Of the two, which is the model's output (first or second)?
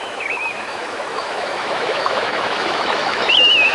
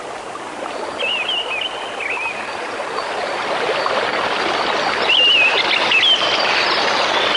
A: first